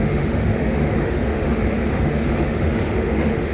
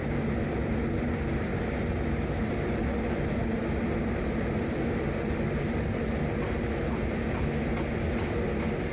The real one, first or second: second